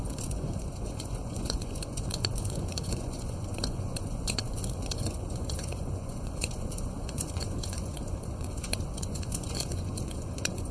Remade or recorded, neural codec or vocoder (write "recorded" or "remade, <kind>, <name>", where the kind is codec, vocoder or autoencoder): remade, vocoder, Vocos